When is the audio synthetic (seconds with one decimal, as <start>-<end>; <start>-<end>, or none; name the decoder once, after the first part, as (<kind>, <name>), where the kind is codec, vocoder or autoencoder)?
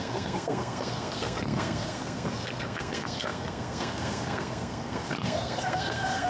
0.0-6.3 (codec, SNAC)